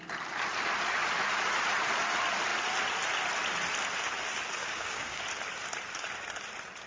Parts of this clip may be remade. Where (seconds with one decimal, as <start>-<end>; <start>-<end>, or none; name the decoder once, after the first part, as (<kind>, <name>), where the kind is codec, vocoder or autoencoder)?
4.6-5.2 (codec, DAC)